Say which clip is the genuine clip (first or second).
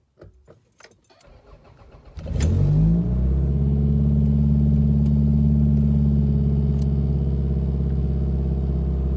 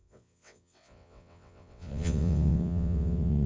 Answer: first